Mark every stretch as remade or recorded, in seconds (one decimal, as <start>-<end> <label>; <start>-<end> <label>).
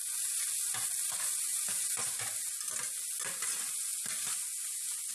0.0-1.5 recorded; 1.5-2.1 remade; 2.1-5.1 recorded